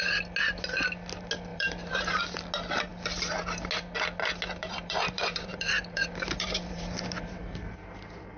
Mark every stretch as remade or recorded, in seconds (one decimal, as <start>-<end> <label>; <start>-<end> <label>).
0.0-1.5 recorded; 1.5-2.2 remade; 2.2-4.6 recorded; 4.6-8.4 remade